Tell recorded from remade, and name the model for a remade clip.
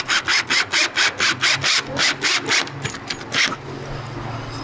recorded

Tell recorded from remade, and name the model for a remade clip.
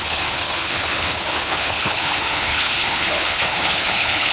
remade, codec, HILCodec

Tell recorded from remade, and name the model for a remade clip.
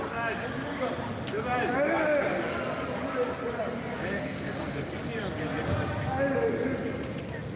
recorded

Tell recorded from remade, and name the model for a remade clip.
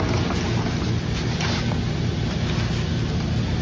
recorded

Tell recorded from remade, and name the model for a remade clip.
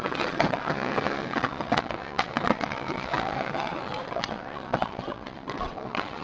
remade, vocoder, WaveNeXt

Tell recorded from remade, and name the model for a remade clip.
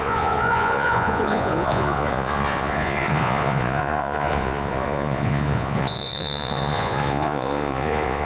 remade, vocoder, Vocos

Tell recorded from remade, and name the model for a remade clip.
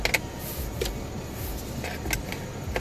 recorded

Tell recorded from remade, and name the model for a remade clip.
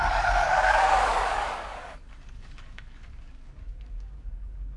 remade, codec, DAC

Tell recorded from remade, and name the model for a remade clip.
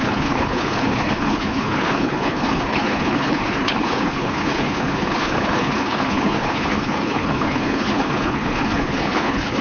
remade, codec, HILCodec